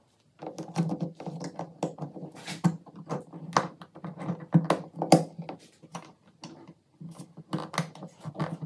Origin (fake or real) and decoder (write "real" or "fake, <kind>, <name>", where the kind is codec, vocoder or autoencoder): real